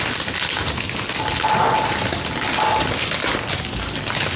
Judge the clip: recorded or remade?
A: recorded